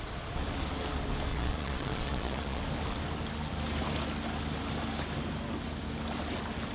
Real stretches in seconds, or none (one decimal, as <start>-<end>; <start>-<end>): 0.0-1.3; 2.6-6.7

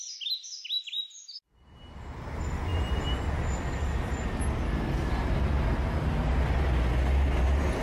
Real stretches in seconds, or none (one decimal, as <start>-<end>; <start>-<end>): 0.0-7.8